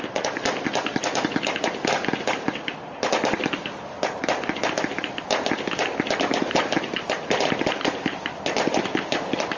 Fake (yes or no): no